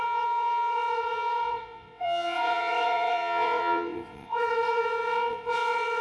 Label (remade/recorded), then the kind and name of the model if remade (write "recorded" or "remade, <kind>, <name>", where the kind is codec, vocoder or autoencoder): remade, vocoder, WaveNeXt